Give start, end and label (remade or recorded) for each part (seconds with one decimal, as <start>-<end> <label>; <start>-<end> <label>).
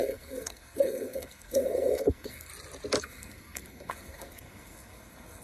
0.0-2.5 remade; 2.5-3.0 recorded; 3.0-5.4 remade